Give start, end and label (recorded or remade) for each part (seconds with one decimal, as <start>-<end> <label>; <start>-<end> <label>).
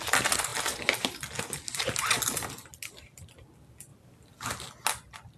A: 0.0-5.4 recorded